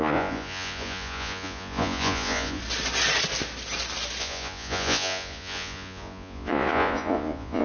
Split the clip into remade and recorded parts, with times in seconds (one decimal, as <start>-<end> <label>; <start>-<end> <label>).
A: 0.0-2.6 remade; 2.6-4.2 recorded; 4.2-7.6 remade